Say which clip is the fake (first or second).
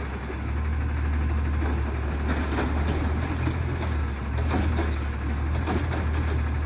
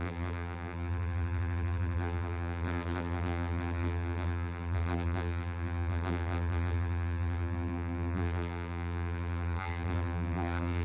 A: second